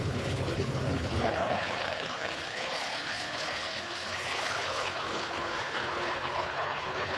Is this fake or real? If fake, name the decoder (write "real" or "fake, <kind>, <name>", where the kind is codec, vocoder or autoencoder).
fake, codec, HILCodec